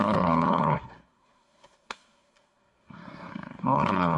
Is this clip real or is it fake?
fake